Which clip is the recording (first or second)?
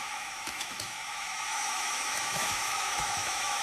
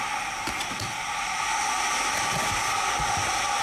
second